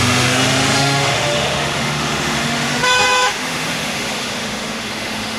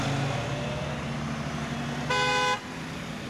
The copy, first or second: first